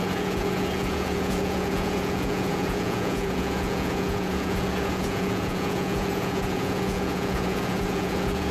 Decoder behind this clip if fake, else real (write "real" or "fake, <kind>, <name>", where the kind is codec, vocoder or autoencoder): fake, vocoder, Vocos